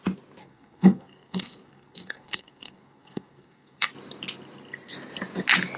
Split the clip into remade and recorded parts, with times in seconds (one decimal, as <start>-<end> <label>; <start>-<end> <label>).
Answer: 0.0-0.4 recorded; 0.4-3.9 remade; 3.9-5.8 recorded